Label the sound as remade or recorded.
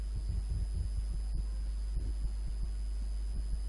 recorded